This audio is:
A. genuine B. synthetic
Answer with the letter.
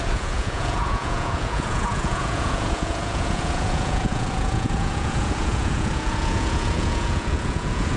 B